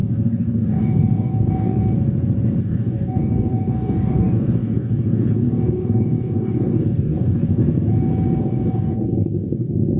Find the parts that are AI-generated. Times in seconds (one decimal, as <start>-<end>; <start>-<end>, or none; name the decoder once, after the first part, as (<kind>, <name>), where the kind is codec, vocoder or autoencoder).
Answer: 0.0-1.8 (codec, DAC); 2.6-7.6; 8.4-10.0